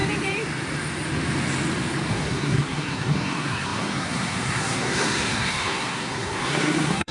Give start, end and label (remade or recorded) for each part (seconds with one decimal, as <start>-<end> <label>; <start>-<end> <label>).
0.0-2.1 recorded; 2.1-7.1 remade

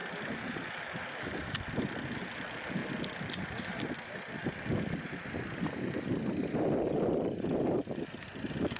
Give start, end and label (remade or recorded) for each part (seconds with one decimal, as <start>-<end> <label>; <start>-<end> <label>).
0.0-8.8 recorded

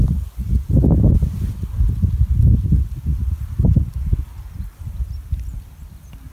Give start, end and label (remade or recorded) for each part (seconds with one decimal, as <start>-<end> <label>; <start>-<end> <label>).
0.0-6.3 recorded